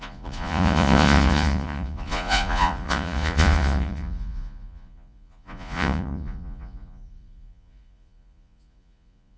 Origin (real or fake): fake